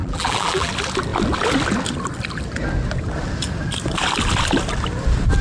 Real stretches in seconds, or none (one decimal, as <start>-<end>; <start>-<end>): 0.7-5.4